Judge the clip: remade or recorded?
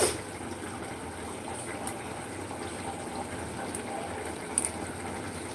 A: recorded